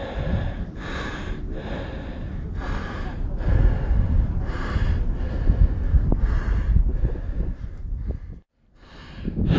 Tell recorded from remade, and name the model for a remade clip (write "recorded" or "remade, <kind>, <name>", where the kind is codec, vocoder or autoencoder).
recorded